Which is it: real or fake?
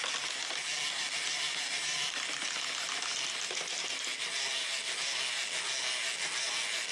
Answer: real